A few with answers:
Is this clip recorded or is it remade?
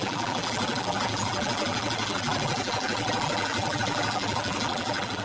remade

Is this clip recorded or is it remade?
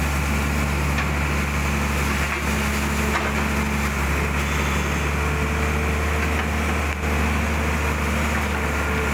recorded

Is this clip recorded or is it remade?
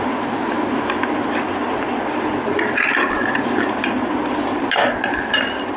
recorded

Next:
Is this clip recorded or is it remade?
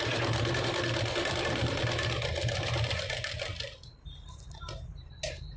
recorded